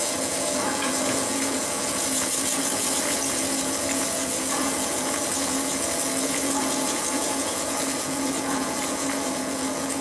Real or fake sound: fake